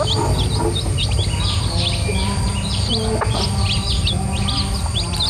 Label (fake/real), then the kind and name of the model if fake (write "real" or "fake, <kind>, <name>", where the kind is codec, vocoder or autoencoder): real